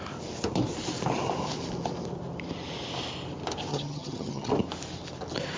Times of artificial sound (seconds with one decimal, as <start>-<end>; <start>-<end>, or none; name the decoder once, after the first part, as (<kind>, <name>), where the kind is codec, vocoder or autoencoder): 3.7-4.5 (vocoder, HiFi-GAN)